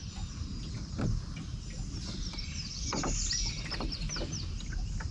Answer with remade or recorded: recorded